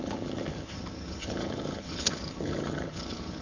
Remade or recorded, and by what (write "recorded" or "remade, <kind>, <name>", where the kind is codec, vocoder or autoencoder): remade, vocoder, HiFi-GAN